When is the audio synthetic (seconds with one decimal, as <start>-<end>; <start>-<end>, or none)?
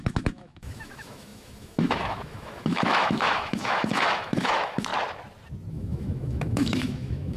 0.0-4.9; 5.7-7.4